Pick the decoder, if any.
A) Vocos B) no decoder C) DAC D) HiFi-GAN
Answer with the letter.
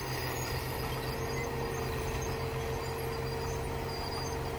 B